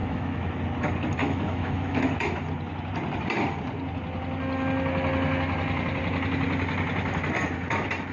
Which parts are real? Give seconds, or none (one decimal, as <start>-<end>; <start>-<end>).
0.6-1.2; 2.0-8.1